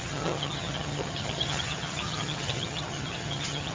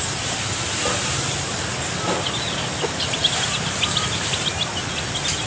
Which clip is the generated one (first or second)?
first